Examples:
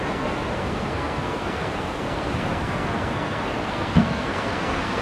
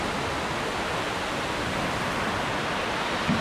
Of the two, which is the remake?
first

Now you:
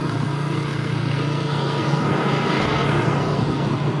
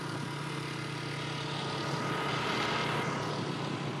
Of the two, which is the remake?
first